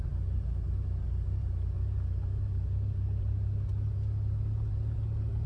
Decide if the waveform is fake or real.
real